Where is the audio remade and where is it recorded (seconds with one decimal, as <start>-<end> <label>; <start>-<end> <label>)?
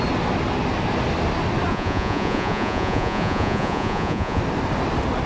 0.0-1.7 recorded; 1.7-4.4 remade; 4.4-5.3 recorded